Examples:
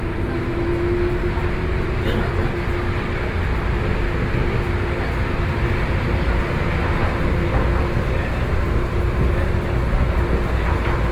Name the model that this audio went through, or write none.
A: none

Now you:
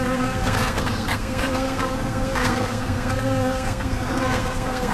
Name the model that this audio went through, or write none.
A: codec, SNAC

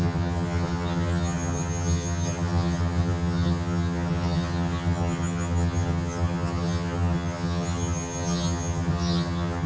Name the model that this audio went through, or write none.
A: vocoder, HiFi-GAN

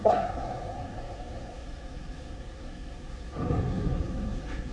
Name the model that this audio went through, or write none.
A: codec, SNAC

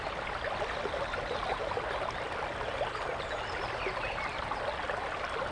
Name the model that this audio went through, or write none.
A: none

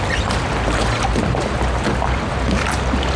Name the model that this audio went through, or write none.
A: none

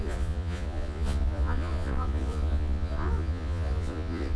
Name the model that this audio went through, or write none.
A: vocoder, Vocos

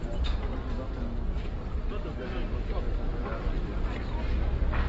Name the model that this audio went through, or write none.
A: none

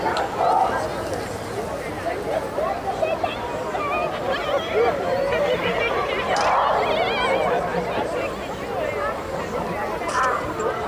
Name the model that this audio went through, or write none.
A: none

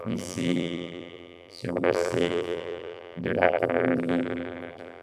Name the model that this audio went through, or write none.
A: vocoder, BigVGAN v2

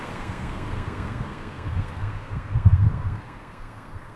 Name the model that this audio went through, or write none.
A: codec, SNAC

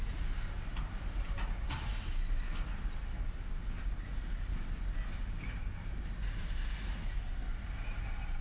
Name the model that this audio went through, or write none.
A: none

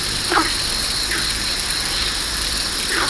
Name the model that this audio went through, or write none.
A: none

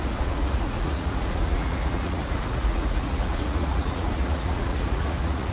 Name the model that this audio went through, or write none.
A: vocoder, Vocos